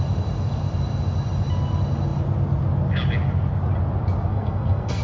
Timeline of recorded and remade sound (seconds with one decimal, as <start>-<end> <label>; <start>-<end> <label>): 0.0-4.3 recorded; 4.3-5.0 remade